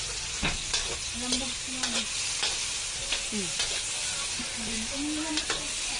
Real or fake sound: real